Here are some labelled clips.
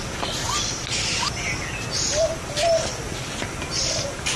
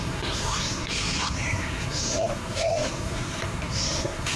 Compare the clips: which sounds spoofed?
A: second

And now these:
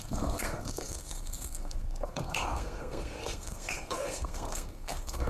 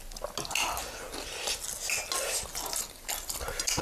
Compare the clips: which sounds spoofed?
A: first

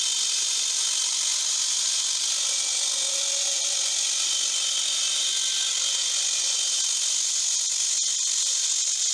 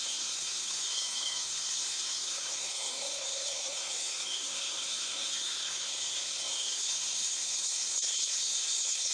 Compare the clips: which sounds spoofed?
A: second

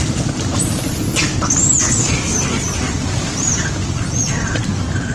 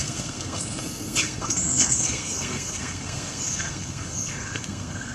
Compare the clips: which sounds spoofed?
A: second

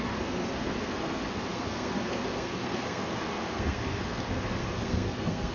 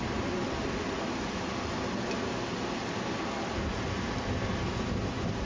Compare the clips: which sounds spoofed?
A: first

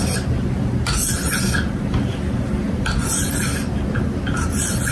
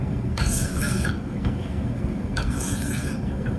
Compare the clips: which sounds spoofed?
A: second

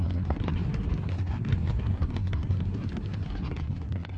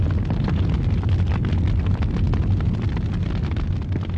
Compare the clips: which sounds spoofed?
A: first